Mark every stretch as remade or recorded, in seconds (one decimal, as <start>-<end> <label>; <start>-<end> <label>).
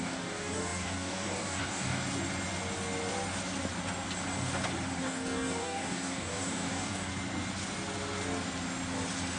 0.0-2.0 remade; 2.0-5.0 recorded; 5.0-7.1 remade; 7.1-9.4 recorded